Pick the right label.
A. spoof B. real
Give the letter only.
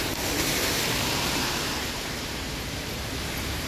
A